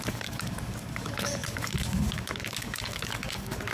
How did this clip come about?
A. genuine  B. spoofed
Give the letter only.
B